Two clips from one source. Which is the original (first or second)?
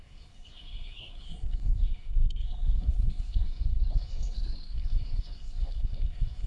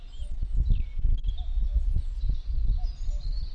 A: second